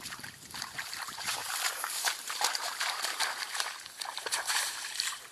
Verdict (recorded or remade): remade